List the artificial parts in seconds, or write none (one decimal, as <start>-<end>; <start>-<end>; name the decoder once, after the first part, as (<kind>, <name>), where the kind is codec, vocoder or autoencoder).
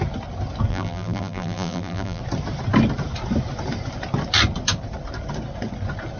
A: 0.7-2.2 (vocoder, BigVGAN v2)